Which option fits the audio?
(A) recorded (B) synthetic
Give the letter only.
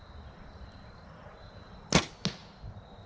A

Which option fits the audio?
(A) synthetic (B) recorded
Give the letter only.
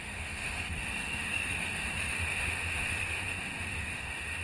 A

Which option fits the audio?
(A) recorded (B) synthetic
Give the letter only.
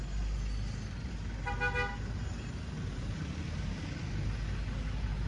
A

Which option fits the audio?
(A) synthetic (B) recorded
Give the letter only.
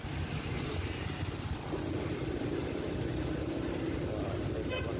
B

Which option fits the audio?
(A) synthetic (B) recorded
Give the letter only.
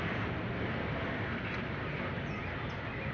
B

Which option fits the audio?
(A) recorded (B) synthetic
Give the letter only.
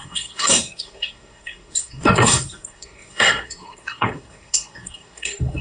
B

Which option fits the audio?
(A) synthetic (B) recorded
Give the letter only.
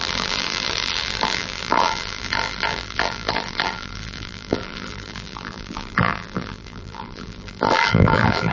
A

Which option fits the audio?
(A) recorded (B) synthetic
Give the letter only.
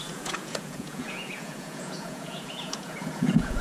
B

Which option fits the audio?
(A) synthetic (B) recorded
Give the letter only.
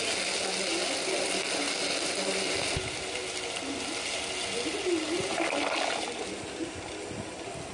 B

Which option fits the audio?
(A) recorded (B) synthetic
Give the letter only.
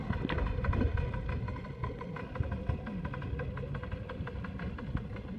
A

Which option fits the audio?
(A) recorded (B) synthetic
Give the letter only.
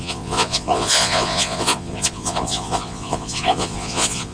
B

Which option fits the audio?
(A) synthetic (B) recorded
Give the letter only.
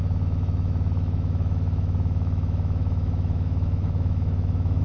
A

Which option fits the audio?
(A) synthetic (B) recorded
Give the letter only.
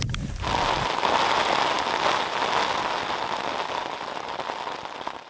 B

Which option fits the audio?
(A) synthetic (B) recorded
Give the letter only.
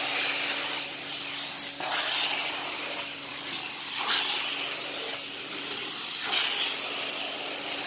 B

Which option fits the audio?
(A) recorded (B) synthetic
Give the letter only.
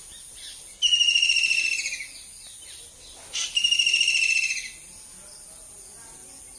A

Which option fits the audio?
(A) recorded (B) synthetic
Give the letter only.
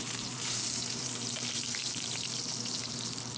B